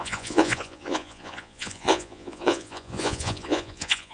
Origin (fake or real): fake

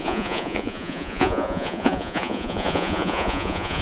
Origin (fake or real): fake